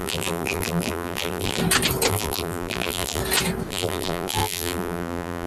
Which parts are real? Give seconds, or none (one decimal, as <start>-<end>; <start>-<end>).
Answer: 1.6-2.1; 3.2-3.7